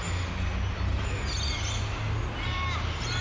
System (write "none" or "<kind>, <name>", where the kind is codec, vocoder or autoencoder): none